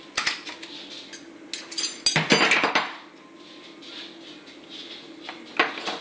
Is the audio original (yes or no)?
yes